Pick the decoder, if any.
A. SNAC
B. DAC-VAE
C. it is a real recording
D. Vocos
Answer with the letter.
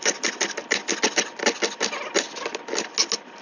C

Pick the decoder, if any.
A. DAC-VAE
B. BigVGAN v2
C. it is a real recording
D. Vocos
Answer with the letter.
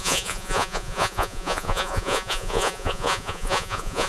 D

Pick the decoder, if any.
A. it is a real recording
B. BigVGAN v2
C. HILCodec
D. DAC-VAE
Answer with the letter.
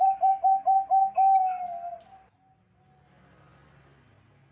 A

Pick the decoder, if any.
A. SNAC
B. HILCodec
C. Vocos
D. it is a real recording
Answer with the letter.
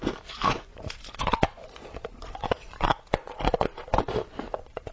C